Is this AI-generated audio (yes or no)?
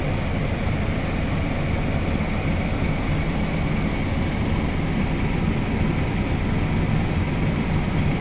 no